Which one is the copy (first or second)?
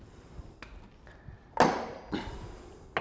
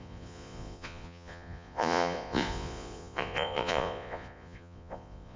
second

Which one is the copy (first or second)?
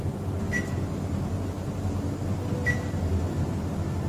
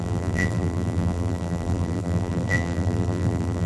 second